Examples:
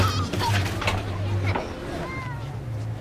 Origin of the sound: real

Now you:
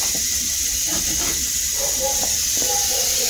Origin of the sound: real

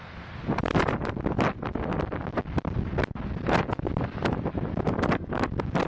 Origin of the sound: real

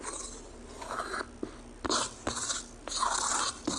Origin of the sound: real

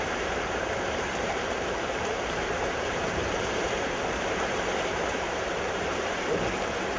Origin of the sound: fake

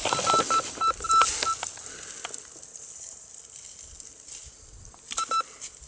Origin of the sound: real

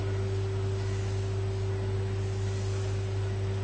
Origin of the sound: real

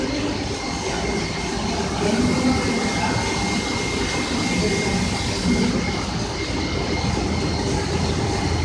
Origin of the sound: real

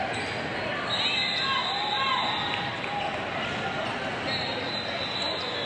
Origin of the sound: real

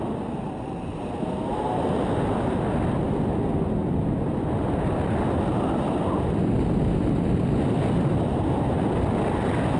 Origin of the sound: real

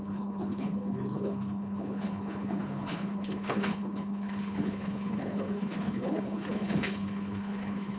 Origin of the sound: fake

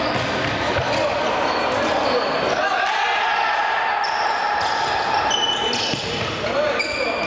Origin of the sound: real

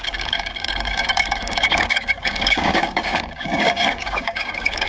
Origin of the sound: fake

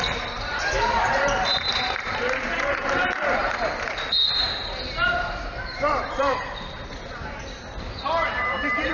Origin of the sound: fake